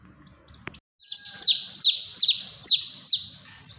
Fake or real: real